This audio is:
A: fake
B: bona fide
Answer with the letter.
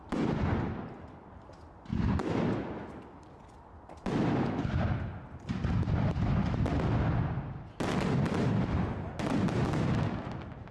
B